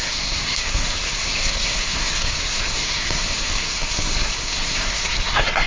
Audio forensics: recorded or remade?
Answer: remade